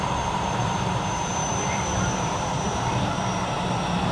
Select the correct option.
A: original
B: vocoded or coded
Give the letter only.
B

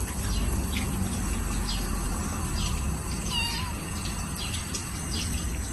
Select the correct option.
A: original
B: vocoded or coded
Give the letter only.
A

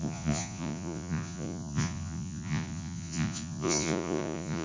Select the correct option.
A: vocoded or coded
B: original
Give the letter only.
A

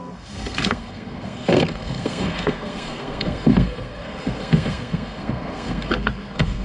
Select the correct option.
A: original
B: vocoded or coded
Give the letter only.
B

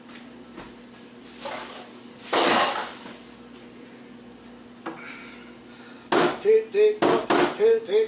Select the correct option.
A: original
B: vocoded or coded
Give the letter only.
A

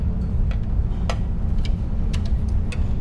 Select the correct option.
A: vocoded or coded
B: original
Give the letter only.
B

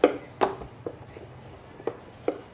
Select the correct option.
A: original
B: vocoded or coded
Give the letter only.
A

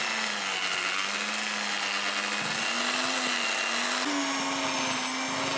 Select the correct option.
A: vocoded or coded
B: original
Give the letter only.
B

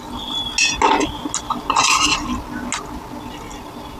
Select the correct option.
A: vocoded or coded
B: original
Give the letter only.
B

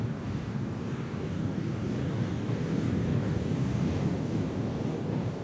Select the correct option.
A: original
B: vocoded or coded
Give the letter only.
B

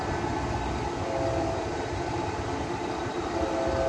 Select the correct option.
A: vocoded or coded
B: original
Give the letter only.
B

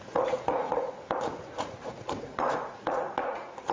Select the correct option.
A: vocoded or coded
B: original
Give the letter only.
A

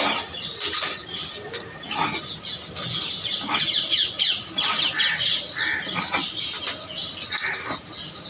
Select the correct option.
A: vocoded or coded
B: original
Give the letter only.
B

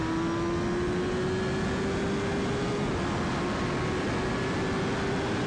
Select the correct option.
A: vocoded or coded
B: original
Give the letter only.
B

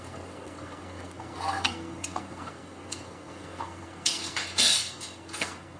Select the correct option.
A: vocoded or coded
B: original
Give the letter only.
A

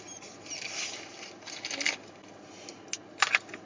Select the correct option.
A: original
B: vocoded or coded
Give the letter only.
A